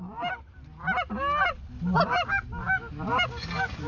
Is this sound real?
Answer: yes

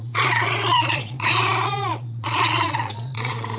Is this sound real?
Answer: no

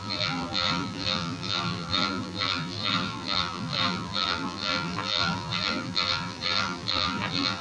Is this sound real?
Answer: no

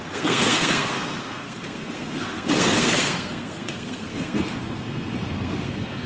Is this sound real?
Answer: no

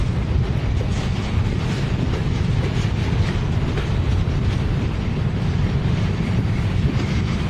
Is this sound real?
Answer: no